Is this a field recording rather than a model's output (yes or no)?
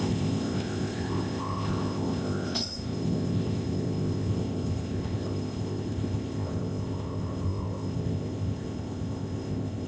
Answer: no